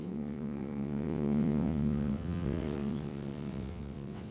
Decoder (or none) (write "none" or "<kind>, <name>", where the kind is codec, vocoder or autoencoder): vocoder, WaveNeXt